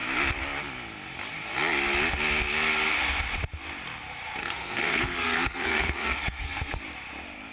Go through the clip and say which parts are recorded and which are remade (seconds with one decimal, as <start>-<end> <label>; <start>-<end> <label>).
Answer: 0.0-4.4 recorded; 4.4-6.8 remade; 6.8-7.5 recorded